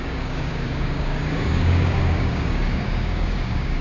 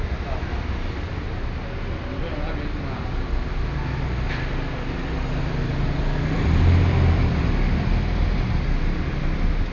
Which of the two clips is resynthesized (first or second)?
first